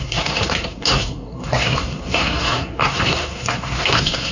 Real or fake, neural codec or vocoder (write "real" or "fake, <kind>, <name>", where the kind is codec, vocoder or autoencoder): fake, codec, SNAC